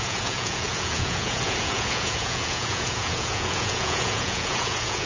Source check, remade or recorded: remade